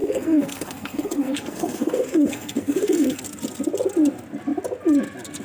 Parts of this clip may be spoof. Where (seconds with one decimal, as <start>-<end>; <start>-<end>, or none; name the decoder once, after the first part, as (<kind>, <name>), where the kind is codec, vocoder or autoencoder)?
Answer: 0.0-3.2 (codec, SNAC)